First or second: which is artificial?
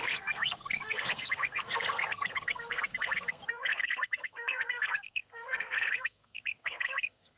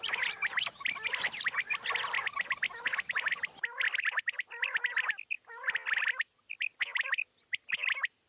first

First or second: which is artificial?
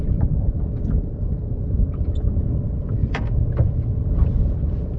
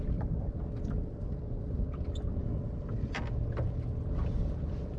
first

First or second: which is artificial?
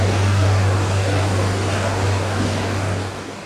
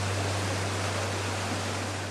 first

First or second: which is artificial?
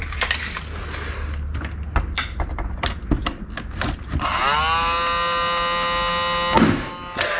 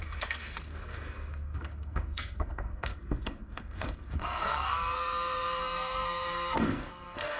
second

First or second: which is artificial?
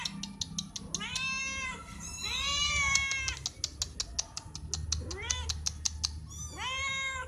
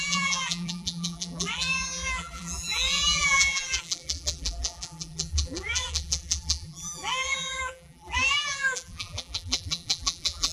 second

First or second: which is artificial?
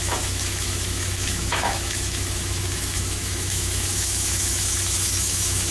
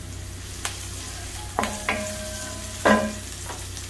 first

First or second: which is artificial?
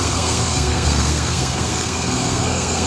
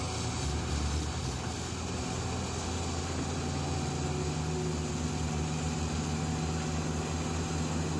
first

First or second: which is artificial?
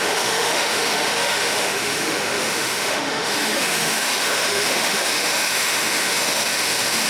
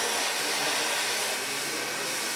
first